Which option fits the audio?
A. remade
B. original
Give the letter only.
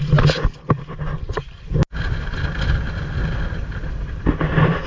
B